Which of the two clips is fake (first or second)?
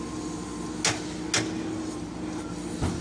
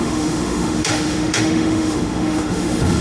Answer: second